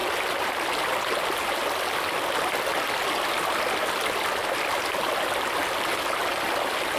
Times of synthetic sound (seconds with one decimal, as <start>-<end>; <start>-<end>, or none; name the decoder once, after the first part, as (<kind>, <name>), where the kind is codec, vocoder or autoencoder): none